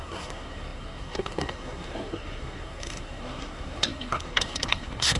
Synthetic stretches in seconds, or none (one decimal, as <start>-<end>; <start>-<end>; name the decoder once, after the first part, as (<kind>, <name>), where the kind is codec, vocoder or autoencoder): 0.0-5.2 (codec, SNAC)